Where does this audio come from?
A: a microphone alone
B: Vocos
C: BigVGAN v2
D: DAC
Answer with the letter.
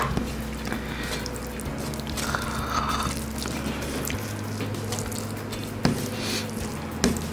A